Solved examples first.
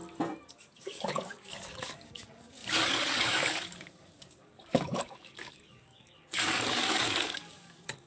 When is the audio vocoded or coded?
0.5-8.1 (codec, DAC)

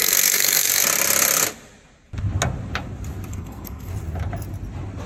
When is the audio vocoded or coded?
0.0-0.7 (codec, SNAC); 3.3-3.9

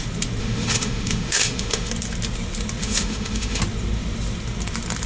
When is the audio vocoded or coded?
0.4-1.9 (autoencoder, DAC-VAE); 2.8-3.6

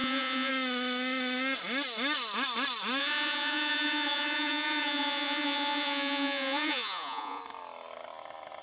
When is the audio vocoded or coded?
0.0-0.5 (vocoder, Vocos); 3.0-7.4

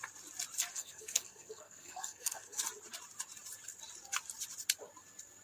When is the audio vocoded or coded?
0.7-2.6 (codec, SNAC)

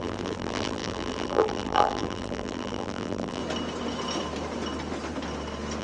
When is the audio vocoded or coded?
0.0-3.4 (vocoder, BigVGAN v2)

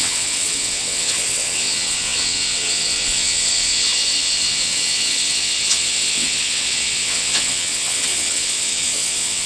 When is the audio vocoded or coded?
0.0-9.5 (vocoder, WaveNeXt)